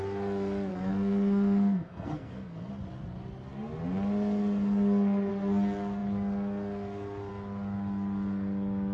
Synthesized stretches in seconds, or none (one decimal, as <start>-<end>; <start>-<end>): 0.7-2.7